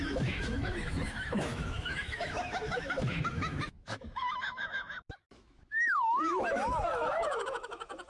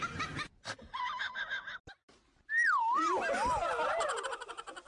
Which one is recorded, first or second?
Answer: second